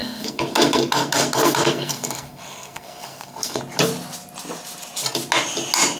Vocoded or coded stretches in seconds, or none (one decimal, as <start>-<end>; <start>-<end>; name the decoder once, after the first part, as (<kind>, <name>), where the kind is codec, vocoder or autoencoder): 0.0-3.6 (codec, SNAC)